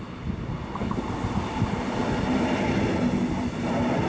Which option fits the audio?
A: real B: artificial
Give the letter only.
A